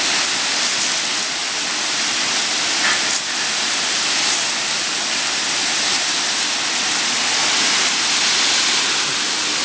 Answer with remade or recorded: recorded